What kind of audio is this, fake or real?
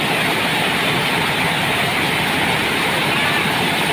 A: real